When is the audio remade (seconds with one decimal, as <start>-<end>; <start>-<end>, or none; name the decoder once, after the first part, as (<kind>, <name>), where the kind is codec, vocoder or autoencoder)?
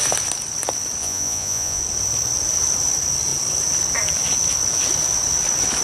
1.0-1.8 (vocoder, Vocos)